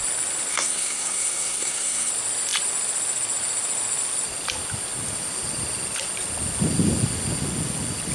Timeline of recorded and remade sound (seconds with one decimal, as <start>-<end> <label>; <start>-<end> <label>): 0.0-0.5 recorded; 0.5-2.1 remade; 2.1-8.1 recorded